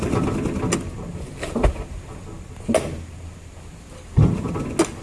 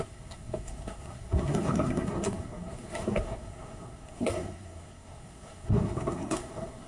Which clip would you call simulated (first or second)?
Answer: second